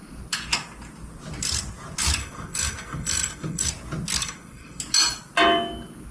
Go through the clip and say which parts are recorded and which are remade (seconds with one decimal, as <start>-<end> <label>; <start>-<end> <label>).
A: 0.0-2.2 recorded; 2.2-3.7 remade; 3.7-4.2 recorded; 4.2-4.8 remade; 4.8-6.1 recorded